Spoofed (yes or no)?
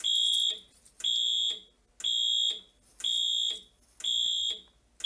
no